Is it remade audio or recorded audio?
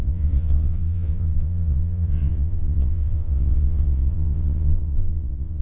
remade